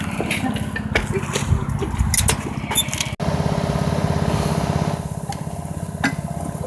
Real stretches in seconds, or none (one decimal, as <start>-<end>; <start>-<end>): 0.0-6.7